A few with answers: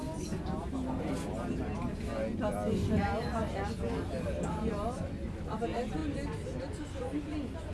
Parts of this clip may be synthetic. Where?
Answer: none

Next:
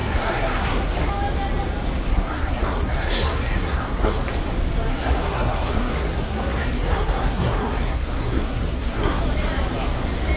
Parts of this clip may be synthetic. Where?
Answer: 0.0-1.1 (codec, SNAC); 2.1-4.2; 4.9-9.2

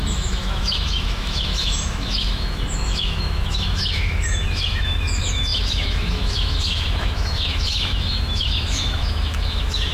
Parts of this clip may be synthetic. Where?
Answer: 0.0-9.9 (autoencoder, DAC-VAE)

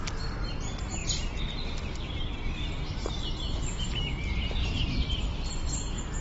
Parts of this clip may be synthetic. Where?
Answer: none